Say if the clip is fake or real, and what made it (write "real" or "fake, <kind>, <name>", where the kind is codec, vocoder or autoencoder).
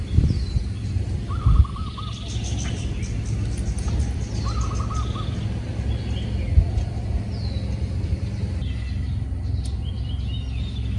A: real